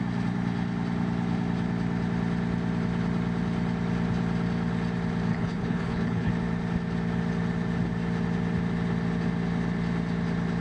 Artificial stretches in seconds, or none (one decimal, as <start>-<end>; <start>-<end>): 5.3-6.3